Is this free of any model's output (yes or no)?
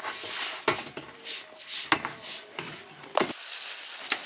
yes